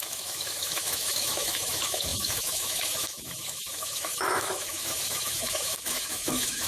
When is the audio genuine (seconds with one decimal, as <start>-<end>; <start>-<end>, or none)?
none